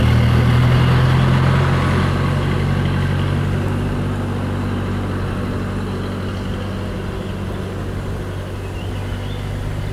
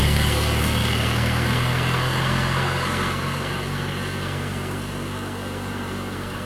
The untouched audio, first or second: first